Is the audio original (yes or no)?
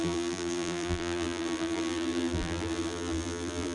no